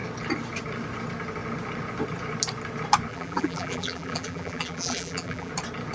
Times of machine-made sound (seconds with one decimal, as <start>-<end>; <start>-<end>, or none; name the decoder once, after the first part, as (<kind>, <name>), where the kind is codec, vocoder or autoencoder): 3.1-5.5 (vocoder, BigVGAN v2)